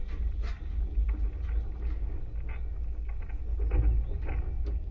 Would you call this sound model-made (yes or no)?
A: no